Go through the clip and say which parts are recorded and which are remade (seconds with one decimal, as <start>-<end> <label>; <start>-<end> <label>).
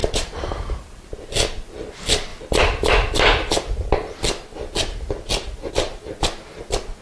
0.0-1.1 remade; 1.1-7.0 recorded